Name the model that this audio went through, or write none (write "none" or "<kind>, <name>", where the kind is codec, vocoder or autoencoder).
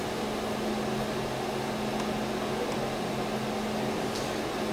none